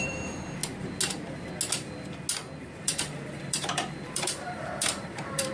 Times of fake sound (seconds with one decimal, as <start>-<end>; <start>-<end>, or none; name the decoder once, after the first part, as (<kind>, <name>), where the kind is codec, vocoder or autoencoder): 0.0-0.6 (vocoder, BigVGAN v2); 2.6-5.5